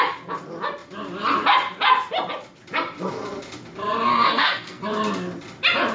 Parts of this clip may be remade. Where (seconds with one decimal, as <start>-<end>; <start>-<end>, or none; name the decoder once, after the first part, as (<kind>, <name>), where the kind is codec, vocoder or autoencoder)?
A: 4.1-4.8 (codec, SNAC)